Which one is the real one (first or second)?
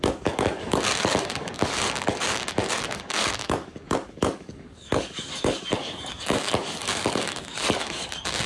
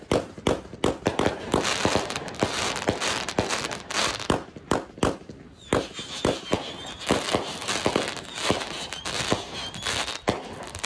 second